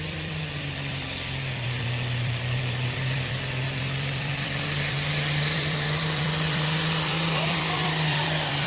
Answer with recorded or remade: remade